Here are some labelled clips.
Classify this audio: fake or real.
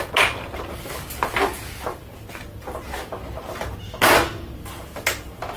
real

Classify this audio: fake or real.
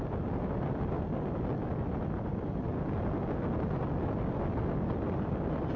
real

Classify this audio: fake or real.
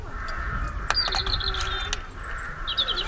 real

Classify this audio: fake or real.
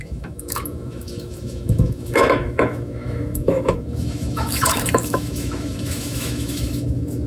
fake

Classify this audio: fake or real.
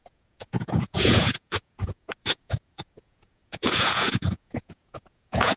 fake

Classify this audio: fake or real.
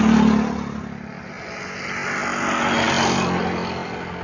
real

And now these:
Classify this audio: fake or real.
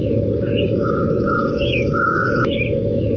fake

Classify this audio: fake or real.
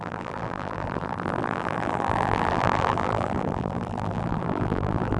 fake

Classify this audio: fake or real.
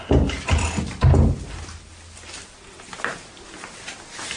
real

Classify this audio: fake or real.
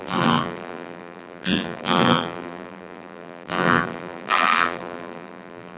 fake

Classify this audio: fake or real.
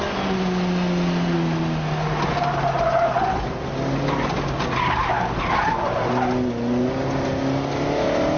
real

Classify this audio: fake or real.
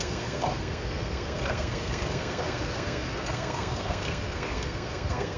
fake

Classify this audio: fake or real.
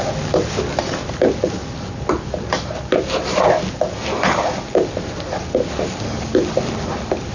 real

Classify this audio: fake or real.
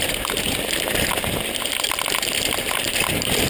real